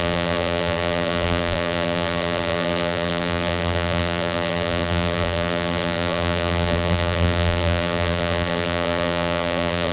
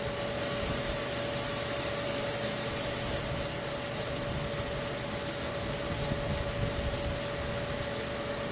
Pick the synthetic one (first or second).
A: first